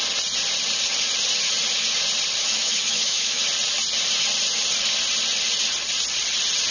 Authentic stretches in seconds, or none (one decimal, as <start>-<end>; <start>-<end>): 0.0-2.4; 3.4-6.7